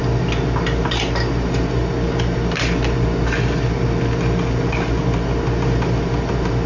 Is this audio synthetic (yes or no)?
no